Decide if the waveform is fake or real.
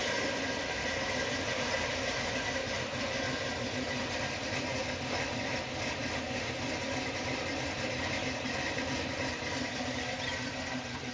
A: fake